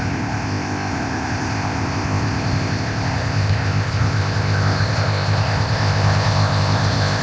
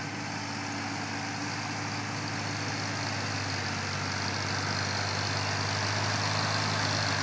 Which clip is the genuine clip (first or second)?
second